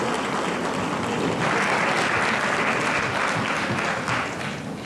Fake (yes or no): no